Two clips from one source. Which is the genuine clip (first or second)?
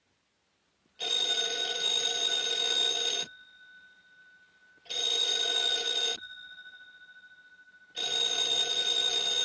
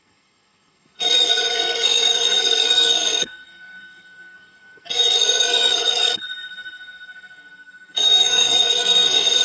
first